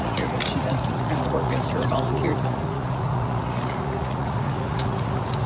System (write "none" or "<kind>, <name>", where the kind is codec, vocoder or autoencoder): vocoder, Vocos